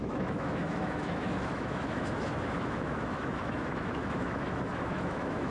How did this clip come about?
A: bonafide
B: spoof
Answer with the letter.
B